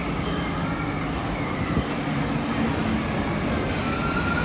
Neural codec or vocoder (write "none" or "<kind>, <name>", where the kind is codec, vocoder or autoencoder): none